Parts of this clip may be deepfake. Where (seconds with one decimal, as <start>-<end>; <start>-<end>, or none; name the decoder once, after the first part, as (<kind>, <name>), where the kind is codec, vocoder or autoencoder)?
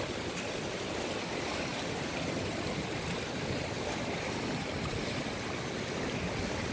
none